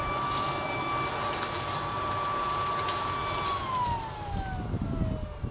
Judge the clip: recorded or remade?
recorded